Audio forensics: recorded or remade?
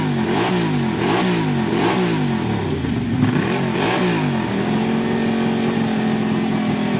recorded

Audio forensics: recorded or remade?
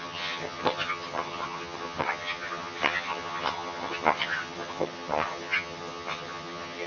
remade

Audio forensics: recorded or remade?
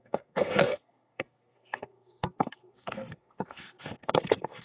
remade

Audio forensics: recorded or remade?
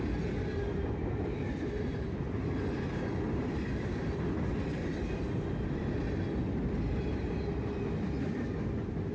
recorded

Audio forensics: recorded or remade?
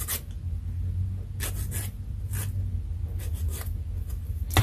recorded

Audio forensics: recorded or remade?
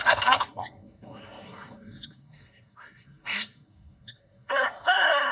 remade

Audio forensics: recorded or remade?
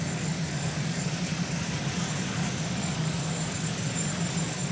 remade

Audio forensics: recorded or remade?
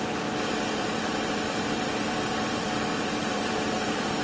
remade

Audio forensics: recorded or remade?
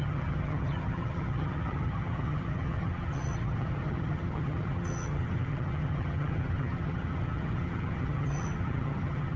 remade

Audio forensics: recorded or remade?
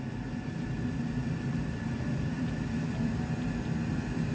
recorded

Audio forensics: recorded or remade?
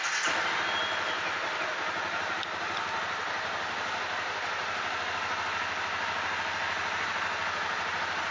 recorded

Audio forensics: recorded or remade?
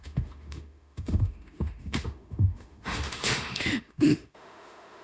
remade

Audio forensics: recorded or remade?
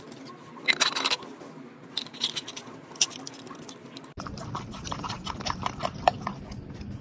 recorded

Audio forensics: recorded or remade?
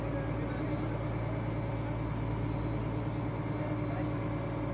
recorded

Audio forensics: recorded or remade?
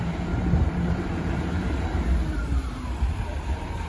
remade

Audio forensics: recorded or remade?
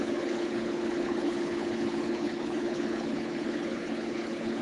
remade